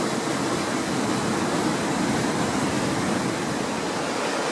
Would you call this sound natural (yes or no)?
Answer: yes